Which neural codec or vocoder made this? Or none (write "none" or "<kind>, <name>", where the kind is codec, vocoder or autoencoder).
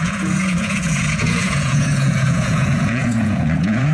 vocoder, Vocos